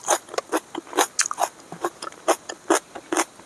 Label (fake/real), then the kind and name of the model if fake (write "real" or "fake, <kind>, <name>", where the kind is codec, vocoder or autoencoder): real